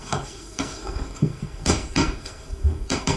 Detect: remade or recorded remade